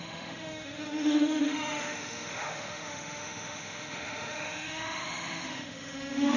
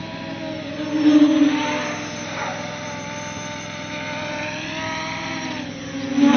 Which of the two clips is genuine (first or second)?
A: second